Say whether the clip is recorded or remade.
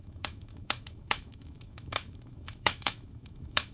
remade